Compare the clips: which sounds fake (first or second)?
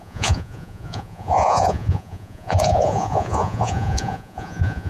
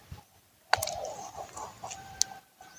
first